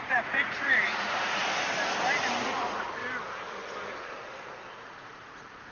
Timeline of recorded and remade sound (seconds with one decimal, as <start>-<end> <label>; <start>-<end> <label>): 0.0-1.4 remade; 1.4-2.4 recorded; 2.4-3.0 remade; 3.0-4.0 recorded; 4.0-5.7 remade